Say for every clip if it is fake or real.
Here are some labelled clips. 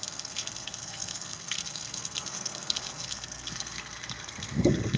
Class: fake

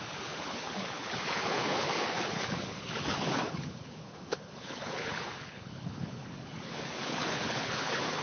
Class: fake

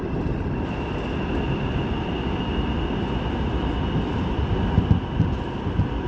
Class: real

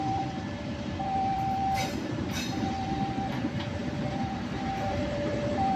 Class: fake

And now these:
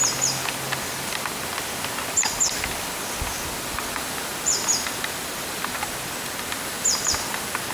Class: real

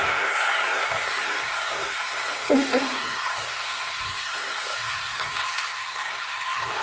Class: fake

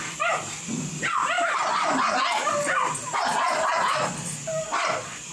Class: real